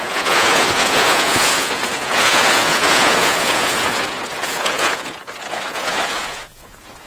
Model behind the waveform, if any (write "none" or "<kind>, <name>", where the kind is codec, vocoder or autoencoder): vocoder, Vocos